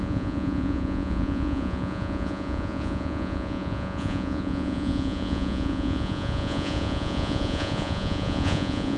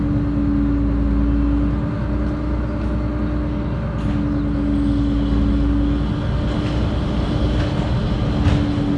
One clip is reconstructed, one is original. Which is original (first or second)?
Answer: second